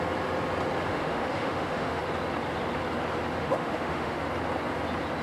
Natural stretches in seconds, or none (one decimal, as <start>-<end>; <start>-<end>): 0.0-0.9; 2.0-3.4; 4.2-5.2

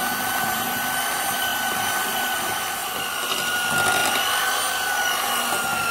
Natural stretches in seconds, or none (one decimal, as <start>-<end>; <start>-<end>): 0.0-5.9

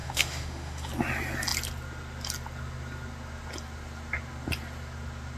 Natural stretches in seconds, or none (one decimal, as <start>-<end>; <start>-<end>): 0.9-5.4

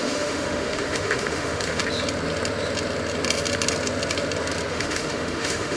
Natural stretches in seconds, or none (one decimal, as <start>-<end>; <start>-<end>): 1.8-4.7

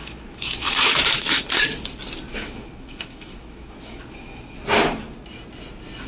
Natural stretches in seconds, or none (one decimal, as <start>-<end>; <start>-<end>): 1.4-2.3; 4.0-6.1

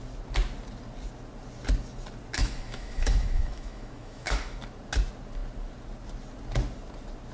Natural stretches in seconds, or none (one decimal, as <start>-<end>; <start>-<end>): 0.0-2.4; 4.6-7.3

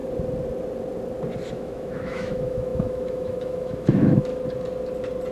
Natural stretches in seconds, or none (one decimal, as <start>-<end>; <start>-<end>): 0.0-1.5; 4.3-5.3

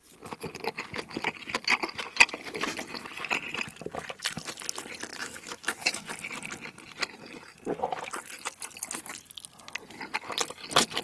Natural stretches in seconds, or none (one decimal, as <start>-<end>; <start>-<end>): 0.0-5.1; 6.1-11.0